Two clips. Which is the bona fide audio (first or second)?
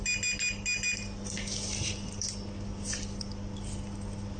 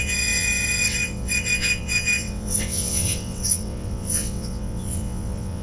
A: first